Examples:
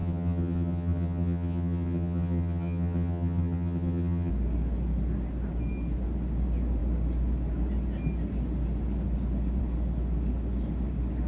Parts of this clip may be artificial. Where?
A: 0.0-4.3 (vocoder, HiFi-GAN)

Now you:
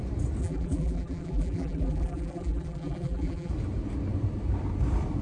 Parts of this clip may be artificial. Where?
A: 0.4-3.5 (vocoder, BigVGAN v2)

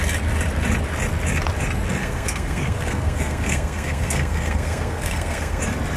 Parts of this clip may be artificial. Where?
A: 2.0-5.6 (codec, SNAC)

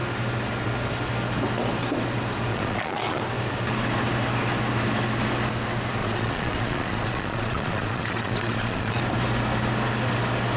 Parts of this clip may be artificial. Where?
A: 2.5-3.2 (vocoder, Vocos); 6.0-9.0

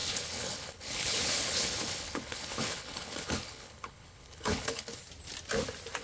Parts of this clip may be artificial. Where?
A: 0.0-5.0 (codec, HILCodec)